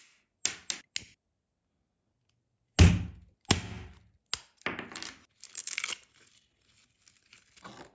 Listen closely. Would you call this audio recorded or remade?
recorded